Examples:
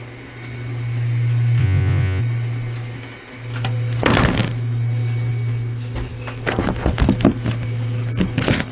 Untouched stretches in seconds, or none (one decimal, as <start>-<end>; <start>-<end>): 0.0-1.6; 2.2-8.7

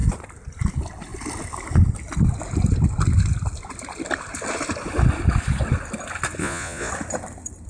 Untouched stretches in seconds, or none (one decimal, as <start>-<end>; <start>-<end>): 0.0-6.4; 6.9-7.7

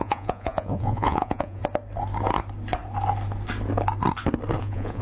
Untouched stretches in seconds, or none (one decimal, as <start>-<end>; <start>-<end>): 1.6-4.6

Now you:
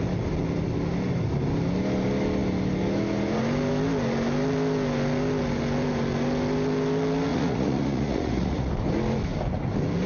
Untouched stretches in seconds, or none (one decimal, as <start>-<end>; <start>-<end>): 0.0-7.3; 8.7-10.1

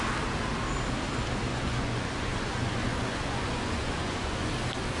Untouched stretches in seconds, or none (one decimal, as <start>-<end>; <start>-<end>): 0.0-1.5; 4.5-5.0

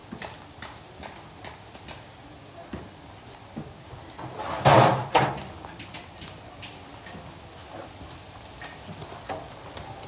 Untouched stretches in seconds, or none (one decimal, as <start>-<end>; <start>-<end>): 0.0-10.1

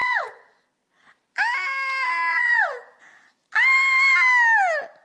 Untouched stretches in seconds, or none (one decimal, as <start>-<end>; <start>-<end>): 0.7-2.3; 3.0-5.0

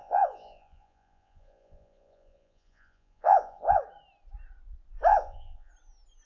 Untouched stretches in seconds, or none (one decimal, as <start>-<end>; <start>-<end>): 3.8-5.1; 5.7-6.3